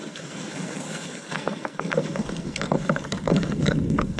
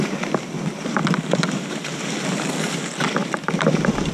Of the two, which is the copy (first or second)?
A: first